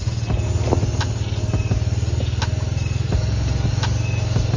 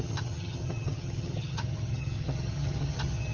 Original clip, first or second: first